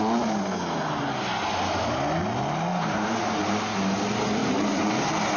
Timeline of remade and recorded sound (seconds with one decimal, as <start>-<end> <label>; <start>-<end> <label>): 0.0-2.7 recorded; 2.7-3.5 remade; 3.5-4.4 recorded; 4.4-5.0 remade; 5.0-5.4 recorded